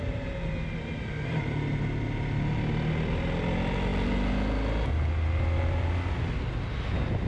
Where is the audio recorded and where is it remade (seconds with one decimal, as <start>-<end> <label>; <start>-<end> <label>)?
0.0-7.3 recorded